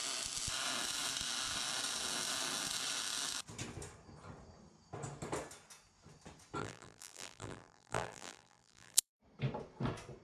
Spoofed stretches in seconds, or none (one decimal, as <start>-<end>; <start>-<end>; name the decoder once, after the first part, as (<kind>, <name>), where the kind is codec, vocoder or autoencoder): 6.6-9.1 (vocoder, BigVGAN v2)